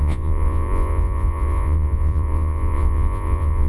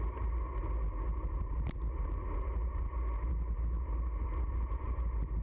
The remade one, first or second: first